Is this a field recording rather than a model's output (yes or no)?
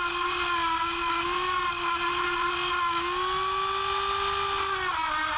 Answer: yes